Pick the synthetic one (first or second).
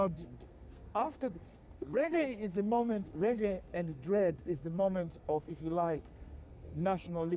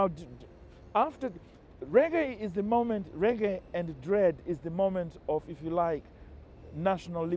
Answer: first